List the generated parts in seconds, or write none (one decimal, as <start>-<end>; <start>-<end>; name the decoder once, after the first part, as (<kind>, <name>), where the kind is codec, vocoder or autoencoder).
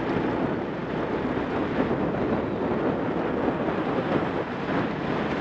none